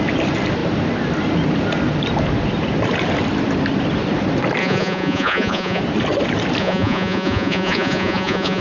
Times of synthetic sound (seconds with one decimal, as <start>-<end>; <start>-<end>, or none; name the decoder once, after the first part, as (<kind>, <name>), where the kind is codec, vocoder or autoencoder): 4.6-5.8 (vocoder, Vocos); 6.6-8.6